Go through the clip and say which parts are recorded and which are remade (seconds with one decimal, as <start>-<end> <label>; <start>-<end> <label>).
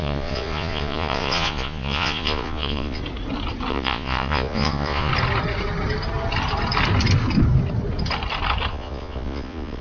0.0-3.0 remade; 3.0-3.7 recorded; 3.7-5.1 remade; 5.1-8.7 recorded; 8.7-9.8 remade